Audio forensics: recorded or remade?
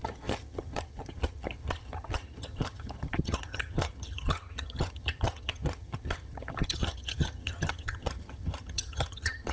remade